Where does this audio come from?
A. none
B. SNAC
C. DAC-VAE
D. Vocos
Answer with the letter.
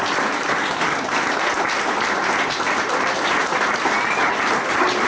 A